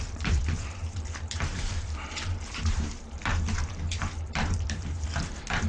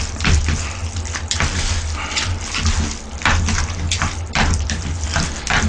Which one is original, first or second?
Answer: second